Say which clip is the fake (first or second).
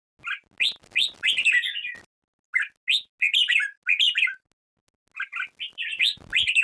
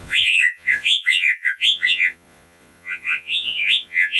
second